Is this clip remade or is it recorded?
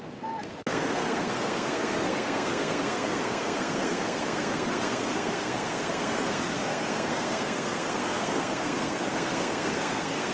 remade